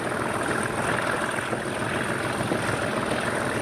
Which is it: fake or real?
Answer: real